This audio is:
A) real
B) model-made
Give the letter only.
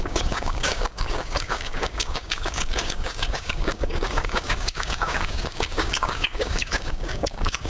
B